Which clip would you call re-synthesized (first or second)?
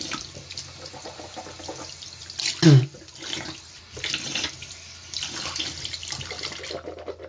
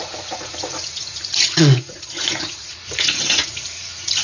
second